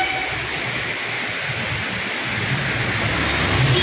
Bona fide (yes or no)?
yes